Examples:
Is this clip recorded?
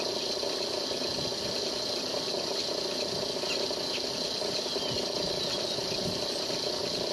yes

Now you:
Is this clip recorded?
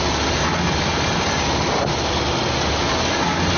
yes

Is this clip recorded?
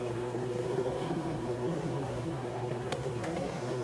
no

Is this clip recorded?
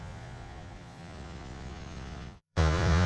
no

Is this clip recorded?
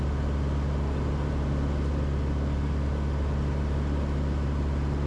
yes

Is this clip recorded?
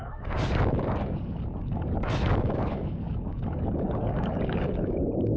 no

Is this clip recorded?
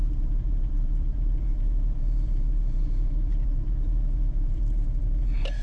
no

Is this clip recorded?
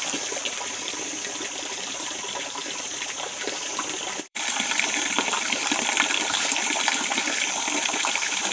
no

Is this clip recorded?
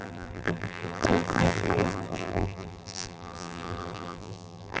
no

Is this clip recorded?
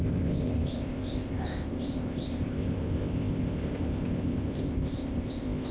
no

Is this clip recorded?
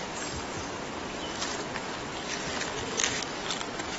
yes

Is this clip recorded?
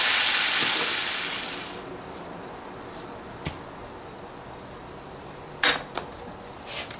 yes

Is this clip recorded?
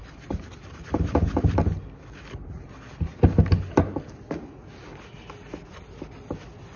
yes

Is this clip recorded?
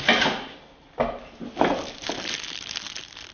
yes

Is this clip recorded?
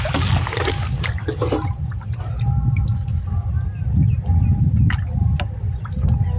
yes